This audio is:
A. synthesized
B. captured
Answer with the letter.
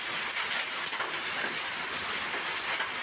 B